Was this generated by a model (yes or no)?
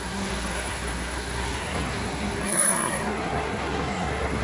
yes